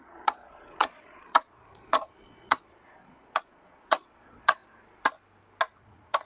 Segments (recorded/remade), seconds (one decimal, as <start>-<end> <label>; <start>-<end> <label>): 0.0-4.6 remade; 4.6-5.7 recorded; 5.7-6.2 remade